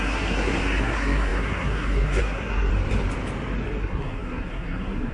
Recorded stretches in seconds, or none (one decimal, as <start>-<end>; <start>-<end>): 2.7-3.8